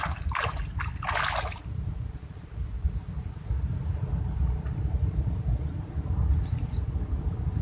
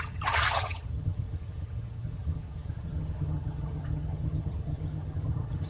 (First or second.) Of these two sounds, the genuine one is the first